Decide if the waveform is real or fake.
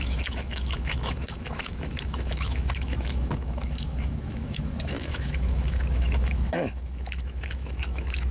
fake